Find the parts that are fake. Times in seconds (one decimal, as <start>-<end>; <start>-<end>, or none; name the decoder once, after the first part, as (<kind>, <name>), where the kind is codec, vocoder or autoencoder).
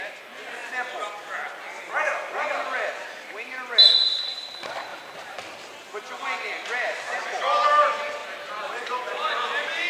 4.9-5.4 (vocoder, BigVGAN v2); 8.2-9.0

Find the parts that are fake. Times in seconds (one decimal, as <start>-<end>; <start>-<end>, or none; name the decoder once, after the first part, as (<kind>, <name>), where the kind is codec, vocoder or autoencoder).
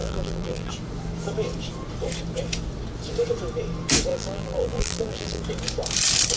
0.0-0.7 (vocoder, BigVGAN v2); 4.1-5.4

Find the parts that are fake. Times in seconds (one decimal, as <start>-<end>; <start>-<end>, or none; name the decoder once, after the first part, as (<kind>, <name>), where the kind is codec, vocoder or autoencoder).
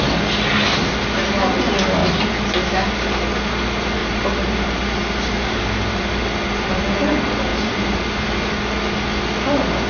4.0-6.8 (vocoder, BigVGAN v2); 7.5-8.3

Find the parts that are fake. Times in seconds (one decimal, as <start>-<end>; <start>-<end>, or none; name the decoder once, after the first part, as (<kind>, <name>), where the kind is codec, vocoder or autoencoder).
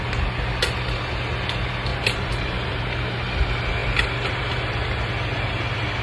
1.9-2.8 (vocoder, BigVGAN v2)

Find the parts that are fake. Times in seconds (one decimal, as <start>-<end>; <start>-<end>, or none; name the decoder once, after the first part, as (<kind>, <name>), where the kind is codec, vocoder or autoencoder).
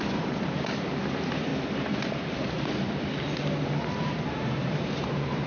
0.0-1.5 (vocoder, BigVGAN v2); 4.0-5.5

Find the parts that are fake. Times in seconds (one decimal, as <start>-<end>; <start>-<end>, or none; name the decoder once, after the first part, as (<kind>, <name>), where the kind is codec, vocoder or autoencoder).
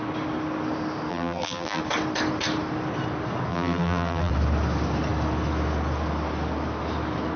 1.1-1.8 (vocoder, BigVGAN v2); 3.5-4.3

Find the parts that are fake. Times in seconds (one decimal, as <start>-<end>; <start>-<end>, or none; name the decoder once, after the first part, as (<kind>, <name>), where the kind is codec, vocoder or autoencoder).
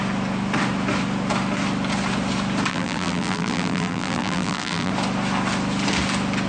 2.7-4.9 (vocoder, BigVGAN v2)